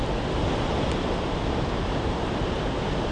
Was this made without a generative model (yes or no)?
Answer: yes